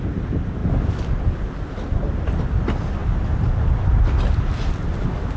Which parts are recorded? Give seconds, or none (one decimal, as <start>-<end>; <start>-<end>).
0.0-5.4